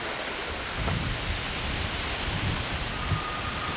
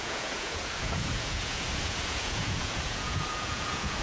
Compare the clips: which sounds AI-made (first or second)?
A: second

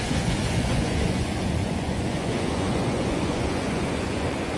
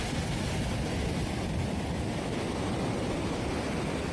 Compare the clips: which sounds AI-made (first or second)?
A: first